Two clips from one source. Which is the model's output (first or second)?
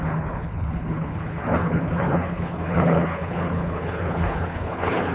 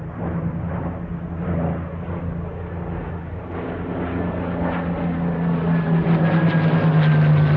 first